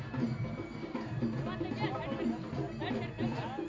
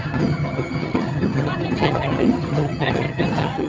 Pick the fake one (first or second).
second